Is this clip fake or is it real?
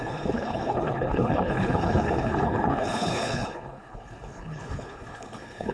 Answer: fake